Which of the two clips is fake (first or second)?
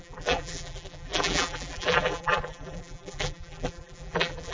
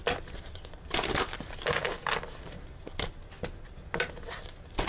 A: first